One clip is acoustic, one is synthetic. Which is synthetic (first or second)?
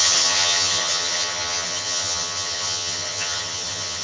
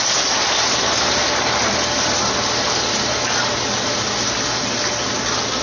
first